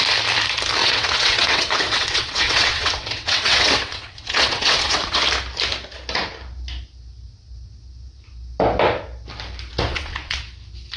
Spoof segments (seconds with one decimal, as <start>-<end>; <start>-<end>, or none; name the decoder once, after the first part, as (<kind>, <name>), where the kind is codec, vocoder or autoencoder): 0.8-5.2 (vocoder, WaveNeXt); 9.9-10.4